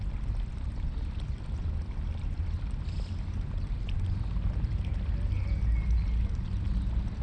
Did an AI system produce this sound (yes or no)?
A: no